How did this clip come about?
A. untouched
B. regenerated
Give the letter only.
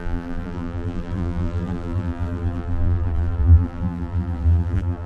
B